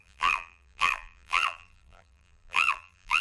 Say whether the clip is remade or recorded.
remade